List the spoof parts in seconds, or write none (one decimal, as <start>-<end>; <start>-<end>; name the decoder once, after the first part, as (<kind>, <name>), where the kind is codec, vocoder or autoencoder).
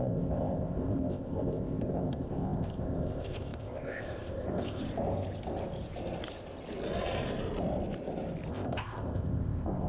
0.0-4.8 (codec, ZipCodec); 8.5-9.9